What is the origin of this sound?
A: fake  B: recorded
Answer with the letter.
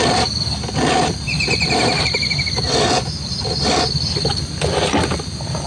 B